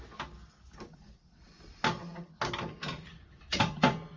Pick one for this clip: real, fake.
real